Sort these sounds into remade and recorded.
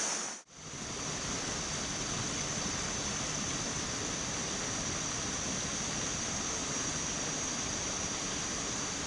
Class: recorded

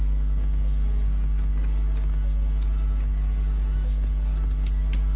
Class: recorded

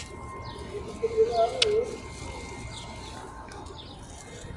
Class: recorded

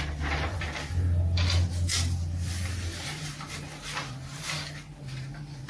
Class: recorded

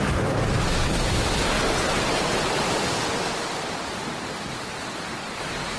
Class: recorded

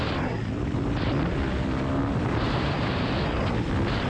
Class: recorded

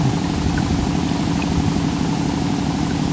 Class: recorded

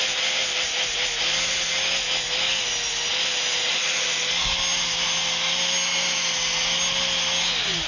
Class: recorded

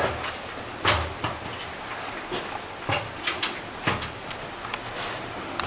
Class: recorded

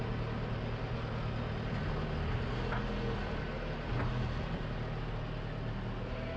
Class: recorded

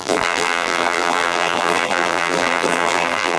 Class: remade